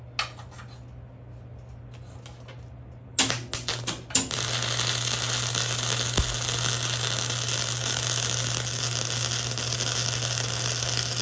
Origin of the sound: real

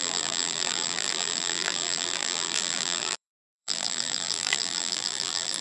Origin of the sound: fake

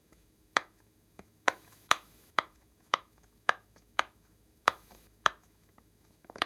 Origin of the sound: fake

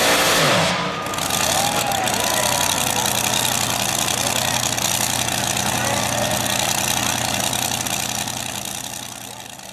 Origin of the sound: real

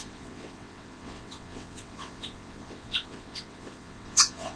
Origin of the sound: fake